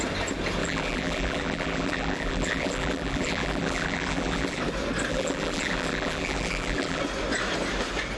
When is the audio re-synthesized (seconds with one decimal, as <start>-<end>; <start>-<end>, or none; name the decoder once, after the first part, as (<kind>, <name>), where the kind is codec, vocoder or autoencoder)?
0.6-4.6 (vocoder, BigVGAN v2); 5.1-7.0